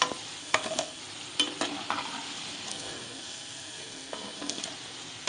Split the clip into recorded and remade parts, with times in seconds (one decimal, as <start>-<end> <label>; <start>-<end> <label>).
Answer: 0.0-0.4 recorded; 0.4-1.0 remade; 1.0-2.7 recorded; 2.7-4.6 remade; 4.6-5.3 recorded